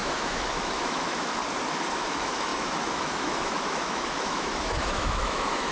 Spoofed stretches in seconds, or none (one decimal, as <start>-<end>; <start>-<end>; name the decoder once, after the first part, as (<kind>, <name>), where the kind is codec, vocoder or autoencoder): 0.0-1.4 (autoencoder, DAC-VAE); 1.9-5.7

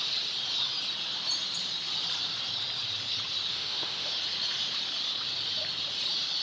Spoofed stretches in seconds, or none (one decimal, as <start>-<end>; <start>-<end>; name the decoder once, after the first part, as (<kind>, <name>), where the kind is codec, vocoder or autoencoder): 3.5-4.1 (autoencoder, DAC-VAE)